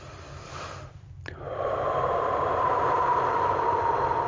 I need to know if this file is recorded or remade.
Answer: recorded